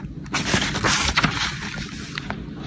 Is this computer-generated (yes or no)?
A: no